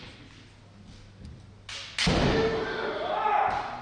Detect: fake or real real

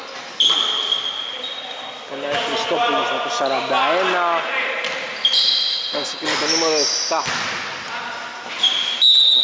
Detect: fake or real real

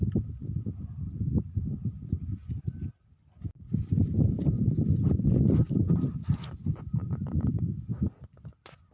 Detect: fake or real real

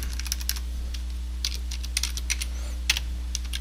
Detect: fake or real real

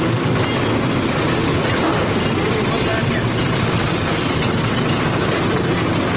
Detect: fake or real real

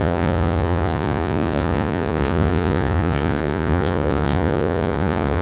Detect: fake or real fake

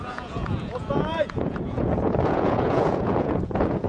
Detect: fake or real fake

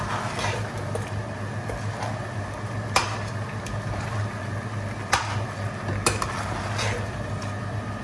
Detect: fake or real real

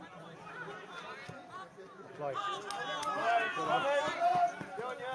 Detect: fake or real real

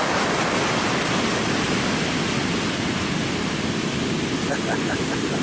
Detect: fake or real real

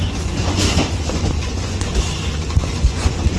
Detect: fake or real fake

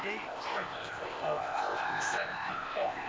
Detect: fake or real fake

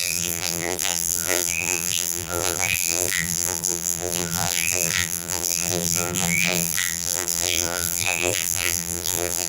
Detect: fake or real fake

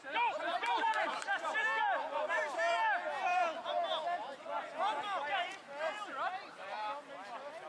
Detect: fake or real real